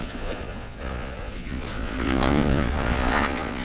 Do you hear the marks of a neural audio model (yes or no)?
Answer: yes